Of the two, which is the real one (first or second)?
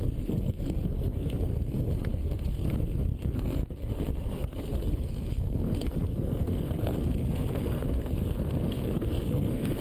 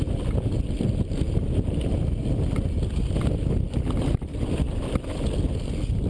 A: second